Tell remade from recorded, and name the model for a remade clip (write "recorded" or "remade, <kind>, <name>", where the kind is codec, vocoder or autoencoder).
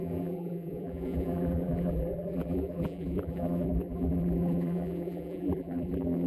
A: remade, vocoder, BigVGAN v2